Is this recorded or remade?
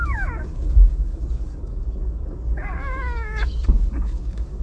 remade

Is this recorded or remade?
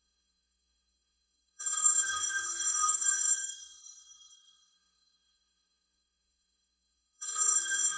remade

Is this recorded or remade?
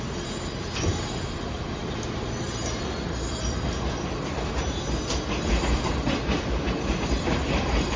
recorded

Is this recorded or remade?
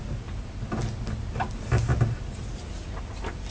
recorded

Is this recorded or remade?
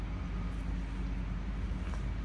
recorded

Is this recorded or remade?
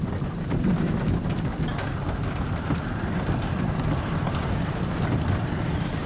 recorded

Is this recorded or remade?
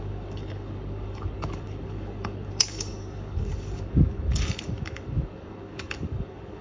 remade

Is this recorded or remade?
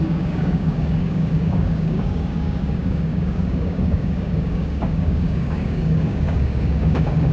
remade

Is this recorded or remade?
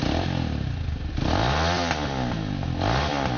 recorded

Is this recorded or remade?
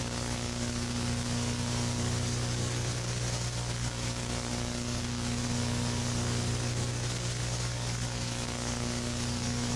remade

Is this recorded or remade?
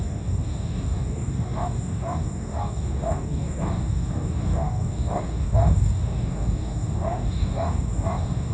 remade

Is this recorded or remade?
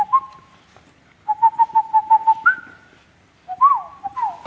recorded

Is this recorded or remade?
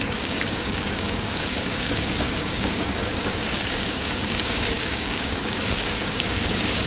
remade